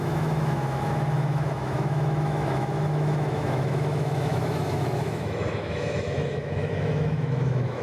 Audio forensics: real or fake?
fake